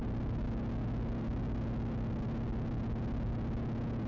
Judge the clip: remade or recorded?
recorded